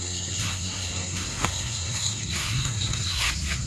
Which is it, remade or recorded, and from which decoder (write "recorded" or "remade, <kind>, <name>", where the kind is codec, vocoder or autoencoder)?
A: remade, codec, SNAC